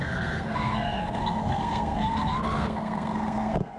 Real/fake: fake